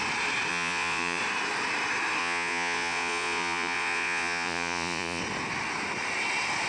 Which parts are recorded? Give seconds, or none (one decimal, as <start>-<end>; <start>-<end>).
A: 0.0-0.5; 1.2-2.2; 5.2-6.7